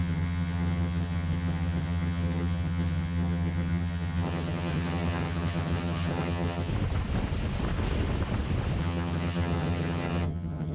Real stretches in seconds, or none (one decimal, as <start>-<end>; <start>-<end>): 6.7-8.8